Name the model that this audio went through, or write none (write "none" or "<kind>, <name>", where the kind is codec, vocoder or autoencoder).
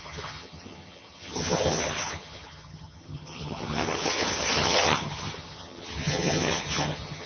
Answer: vocoder, HiFi-GAN